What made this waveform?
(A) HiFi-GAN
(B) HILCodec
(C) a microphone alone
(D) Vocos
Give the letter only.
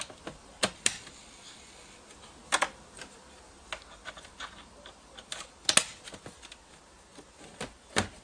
C